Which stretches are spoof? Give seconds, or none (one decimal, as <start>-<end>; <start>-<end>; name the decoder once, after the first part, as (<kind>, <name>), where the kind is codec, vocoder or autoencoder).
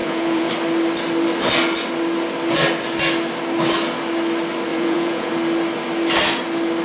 0.0-0.5 (vocoder, Vocos); 4.7-5.3